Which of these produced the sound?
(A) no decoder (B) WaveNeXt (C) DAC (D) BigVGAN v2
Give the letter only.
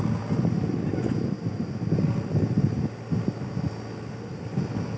A